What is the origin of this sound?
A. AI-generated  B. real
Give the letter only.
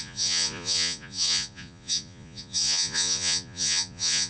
A